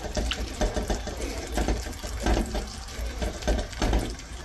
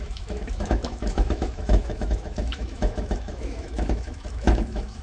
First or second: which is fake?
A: second